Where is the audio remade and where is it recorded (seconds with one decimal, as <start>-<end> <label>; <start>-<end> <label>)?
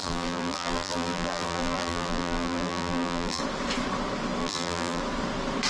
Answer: 0.0-3.4 remade; 3.4-4.4 recorded; 4.4-5.0 remade; 5.0-5.7 recorded